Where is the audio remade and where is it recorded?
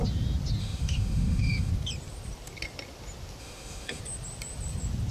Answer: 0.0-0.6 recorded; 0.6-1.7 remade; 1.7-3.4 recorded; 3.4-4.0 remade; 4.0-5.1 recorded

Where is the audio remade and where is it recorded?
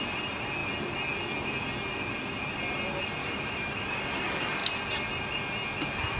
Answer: 0.0-3.2 recorded; 3.2-4.0 remade; 4.0-6.2 recorded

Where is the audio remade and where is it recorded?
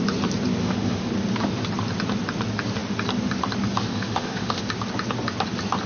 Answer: 0.0-0.6 recorded; 0.6-1.1 remade; 1.1-3.9 recorded; 3.9-4.6 remade; 4.6-5.9 recorded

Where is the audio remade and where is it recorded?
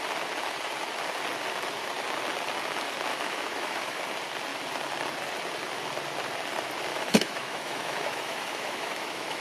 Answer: 0.0-3.1 recorded; 3.1-4.0 remade; 4.0-6.9 recorded; 6.9-9.4 remade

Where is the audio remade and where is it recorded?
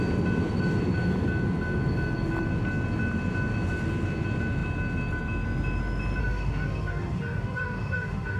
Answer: 0.0-6.2 recorded; 6.2-8.4 remade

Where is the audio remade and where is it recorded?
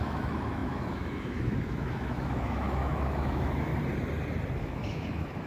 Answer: 0.0-3.7 remade; 3.7-4.6 recorded; 4.6-5.5 remade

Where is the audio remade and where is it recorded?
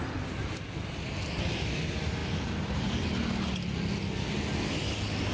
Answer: 0.0-5.3 recorded